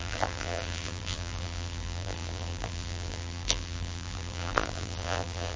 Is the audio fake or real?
fake